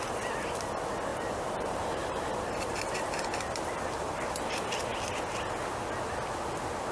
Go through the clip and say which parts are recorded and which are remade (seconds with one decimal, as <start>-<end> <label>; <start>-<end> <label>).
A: 0.0-1.1 recorded; 1.1-2.8 remade; 2.8-6.9 recorded